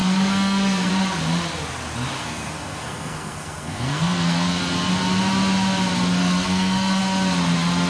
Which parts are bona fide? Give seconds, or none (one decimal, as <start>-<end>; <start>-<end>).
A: 0.9-2.2; 4.6-6.2; 7.0-7.9